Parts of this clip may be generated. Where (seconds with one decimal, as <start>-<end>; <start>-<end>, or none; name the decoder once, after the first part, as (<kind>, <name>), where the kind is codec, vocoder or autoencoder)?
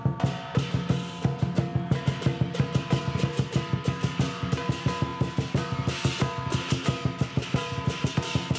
none